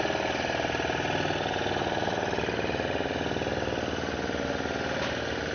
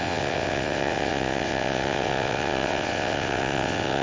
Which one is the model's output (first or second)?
second